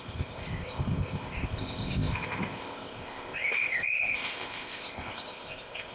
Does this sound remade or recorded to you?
remade